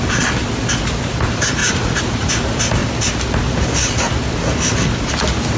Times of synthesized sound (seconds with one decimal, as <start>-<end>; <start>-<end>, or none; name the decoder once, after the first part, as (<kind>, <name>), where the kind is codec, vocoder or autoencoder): 1.6-2.3 (vocoder, Vocos)